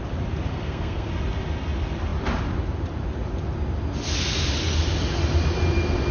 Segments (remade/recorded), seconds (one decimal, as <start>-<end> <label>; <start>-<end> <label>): 0.0-0.5 recorded; 0.5-1.1 remade; 1.1-6.1 recorded